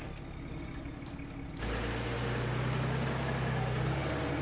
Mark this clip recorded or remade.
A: recorded